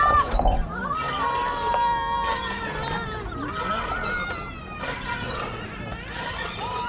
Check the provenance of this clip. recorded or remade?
recorded